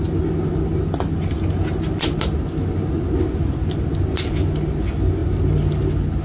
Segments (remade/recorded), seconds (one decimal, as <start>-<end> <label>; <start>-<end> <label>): 0.0-6.2 recorded